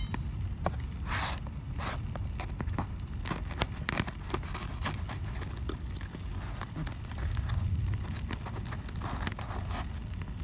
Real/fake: real